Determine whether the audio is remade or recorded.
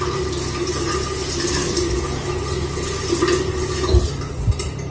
recorded